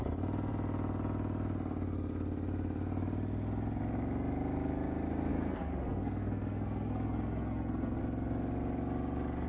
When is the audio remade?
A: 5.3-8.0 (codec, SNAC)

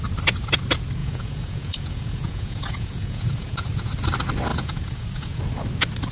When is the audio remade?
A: 1.0-3.9 (vocoder, Vocos); 4.5-5.4

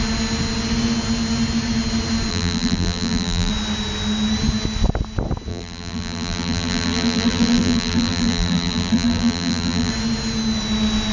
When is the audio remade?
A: 2.3-3.5 (vocoder, BigVGAN v2); 5.5-9.9

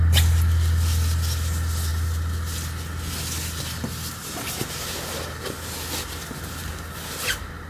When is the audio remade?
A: none

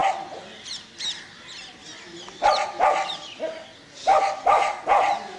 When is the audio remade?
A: none

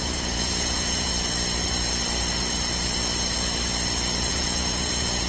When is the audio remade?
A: 0.0-1.1 (vocoder, Vocos); 4.3-5.3

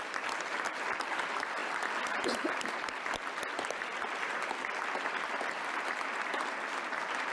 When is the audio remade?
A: 0.0-7.3 (vocoder, BigVGAN v2)

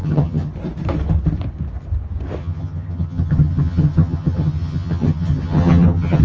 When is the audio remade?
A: 0.0-0.5 (vocoder, HiFi-GAN); 2.4-6.2